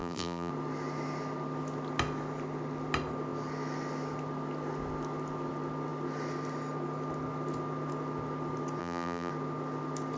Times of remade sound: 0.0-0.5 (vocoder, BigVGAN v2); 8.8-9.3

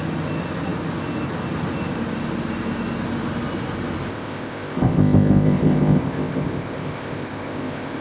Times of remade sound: 4.1-8.0 (codec, ZipCodec)

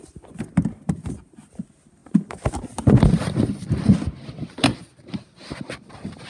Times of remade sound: none